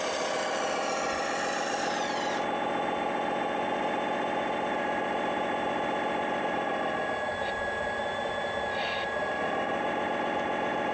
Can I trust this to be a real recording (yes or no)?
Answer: yes